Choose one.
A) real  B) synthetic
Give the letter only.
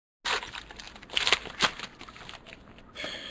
A